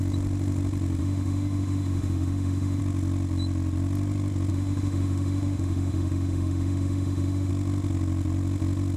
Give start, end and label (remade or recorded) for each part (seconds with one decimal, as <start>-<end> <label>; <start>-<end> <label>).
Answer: 0.0-1.0 recorded; 1.0-2.8 remade; 2.8-4.5 recorded; 4.5-7.5 remade; 7.5-9.0 recorded